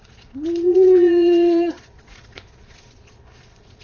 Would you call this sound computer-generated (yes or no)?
yes